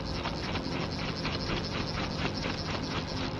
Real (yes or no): yes